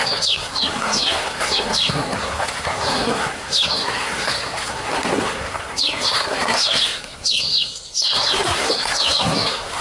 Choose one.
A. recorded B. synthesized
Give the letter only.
B